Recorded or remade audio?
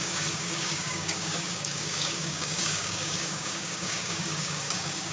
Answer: remade